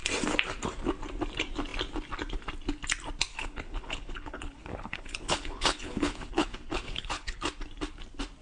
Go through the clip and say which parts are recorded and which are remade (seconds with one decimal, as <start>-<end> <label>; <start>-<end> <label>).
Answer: 0.0-3.3 recorded; 3.3-7.4 remade; 7.4-8.4 recorded